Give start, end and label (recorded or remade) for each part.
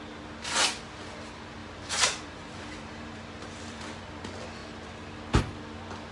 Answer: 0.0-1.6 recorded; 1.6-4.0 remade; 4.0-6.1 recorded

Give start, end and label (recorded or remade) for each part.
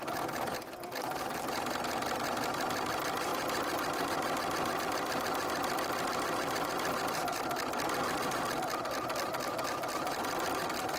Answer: 0.0-3.3 remade; 3.3-4.8 recorded; 4.8-7.3 remade; 7.3-8.8 recorded; 8.8-11.0 remade